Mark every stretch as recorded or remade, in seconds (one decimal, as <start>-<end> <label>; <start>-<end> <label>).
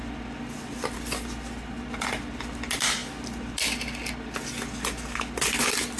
0.0-6.0 recorded